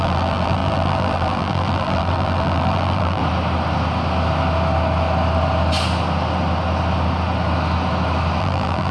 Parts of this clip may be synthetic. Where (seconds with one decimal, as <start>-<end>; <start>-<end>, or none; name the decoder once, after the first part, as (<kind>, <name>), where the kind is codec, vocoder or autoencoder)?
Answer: 0.0-3.2 (vocoder, BigVGAN v2); 8.4-8.9